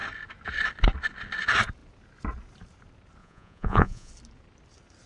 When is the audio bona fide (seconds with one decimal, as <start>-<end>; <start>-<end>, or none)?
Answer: 0.0-3.2; 4.1-5.1